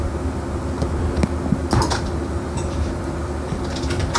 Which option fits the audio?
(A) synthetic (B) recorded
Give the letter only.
B